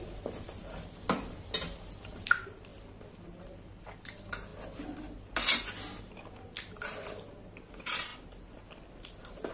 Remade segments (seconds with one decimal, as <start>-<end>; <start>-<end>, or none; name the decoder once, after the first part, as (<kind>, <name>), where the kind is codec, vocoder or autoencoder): none